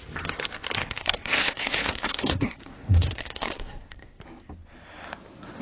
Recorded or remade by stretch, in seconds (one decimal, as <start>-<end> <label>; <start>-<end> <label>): 0.0-0.8 recorded; 0.8-4.2 remade; 4.2-5.6 recorded